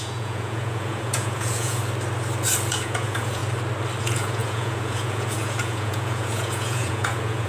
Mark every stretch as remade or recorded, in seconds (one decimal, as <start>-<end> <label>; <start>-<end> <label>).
0.0-1.8 remade; 1.8-2.7 recorded; 2.7-3.4 remade; 3.4-4.0 recorded; 4.0-7.5 remade